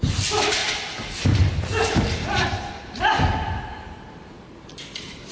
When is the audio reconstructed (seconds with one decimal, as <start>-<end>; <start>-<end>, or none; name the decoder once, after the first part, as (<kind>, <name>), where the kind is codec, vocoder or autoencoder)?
none